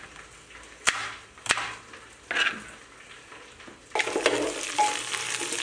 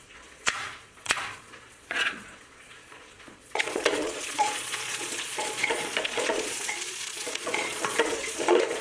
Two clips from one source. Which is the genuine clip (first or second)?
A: first